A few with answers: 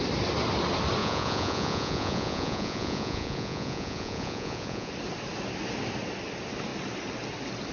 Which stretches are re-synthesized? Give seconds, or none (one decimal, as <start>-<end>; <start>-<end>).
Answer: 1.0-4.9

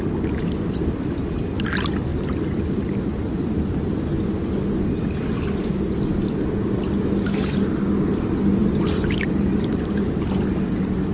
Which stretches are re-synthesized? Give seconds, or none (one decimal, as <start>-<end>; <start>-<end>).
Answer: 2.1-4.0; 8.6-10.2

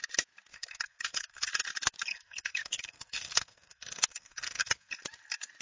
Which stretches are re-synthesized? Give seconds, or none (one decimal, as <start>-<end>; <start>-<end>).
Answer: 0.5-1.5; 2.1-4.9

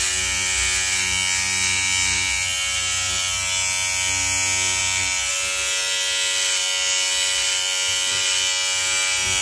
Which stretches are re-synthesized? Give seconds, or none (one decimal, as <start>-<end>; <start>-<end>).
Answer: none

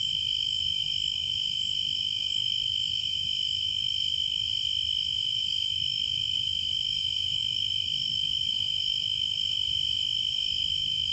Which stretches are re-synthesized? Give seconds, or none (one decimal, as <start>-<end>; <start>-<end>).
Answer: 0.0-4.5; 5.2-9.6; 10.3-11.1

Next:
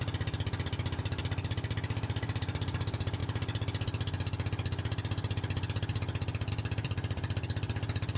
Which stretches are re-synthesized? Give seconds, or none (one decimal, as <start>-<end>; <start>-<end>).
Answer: 0.0-3.2; 6.5-8.2

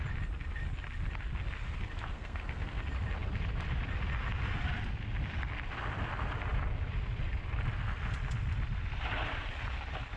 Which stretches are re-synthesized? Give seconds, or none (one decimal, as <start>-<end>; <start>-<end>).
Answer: 2.1-2.8

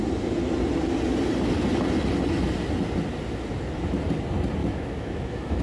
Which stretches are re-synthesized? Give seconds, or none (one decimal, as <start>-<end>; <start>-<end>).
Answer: 4.6-5.6